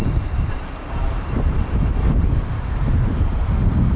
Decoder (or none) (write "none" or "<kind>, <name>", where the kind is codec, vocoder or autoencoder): vocoder, BigVGAN v2